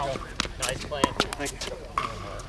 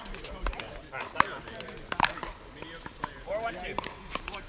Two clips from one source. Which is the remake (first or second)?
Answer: second